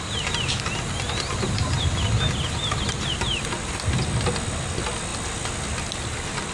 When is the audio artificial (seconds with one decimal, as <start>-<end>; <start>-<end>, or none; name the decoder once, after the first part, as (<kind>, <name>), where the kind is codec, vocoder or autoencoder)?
none